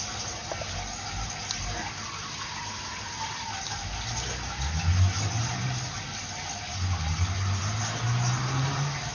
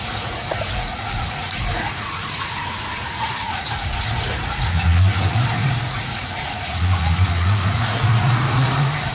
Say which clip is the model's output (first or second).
second